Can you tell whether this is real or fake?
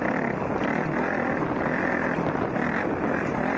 real